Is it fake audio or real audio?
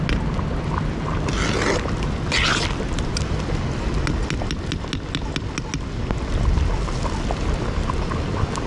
real